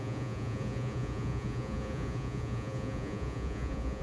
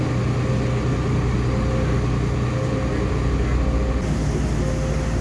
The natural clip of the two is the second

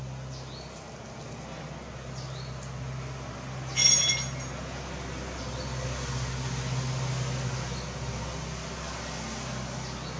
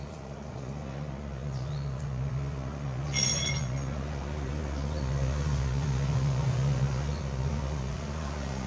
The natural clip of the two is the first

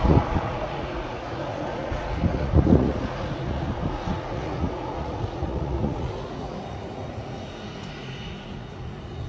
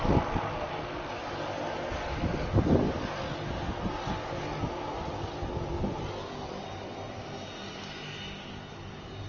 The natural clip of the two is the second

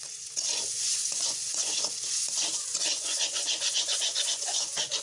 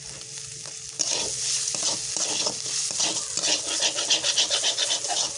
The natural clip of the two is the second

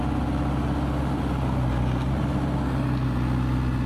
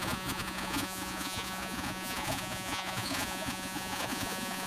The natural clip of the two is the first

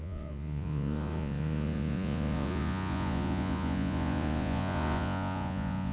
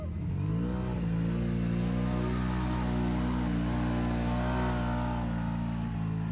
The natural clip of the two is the second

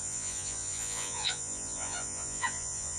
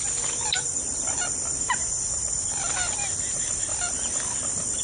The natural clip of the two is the second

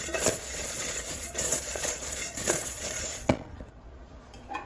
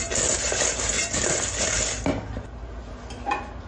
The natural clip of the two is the second